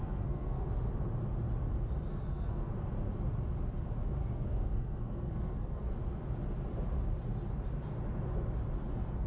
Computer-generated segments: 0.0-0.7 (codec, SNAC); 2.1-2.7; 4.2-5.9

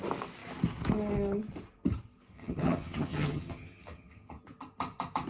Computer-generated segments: 2.3-4.4 (vocoder, HiFi-GAN)

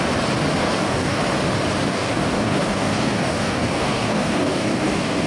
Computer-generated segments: 0.6-1.2 (codec, DAC); 1.9-5.3

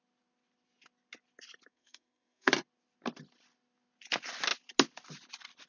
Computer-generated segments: 1.7-2.5 (codec, SNAC)

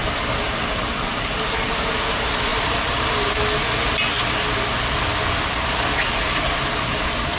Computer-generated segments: 2.5-3.4 (vocoder, BigVGAN v2)

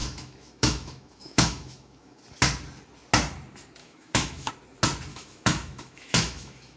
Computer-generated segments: 0.0-2.2 (autoencoder, DAC-VAE); 3.8-4.5; 5.1-6.8

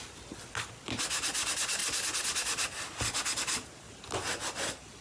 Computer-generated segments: none